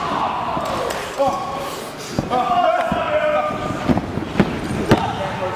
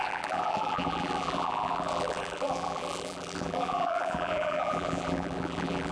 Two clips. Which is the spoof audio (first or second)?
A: second